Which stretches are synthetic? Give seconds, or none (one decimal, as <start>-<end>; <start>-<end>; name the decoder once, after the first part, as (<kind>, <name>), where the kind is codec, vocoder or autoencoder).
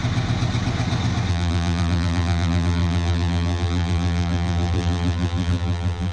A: 1.3-6.1 (vocoder, BigVGAN v2)